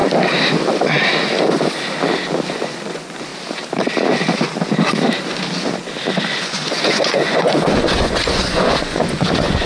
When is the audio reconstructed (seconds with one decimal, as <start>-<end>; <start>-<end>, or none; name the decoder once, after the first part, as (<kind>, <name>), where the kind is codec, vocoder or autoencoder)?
2.5-3.3 (vocoder, Vocos); 6.1-9.7